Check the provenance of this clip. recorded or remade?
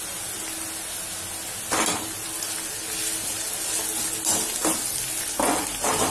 recorded